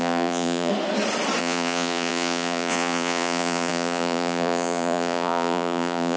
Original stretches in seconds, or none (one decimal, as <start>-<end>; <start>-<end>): 0.7-1.4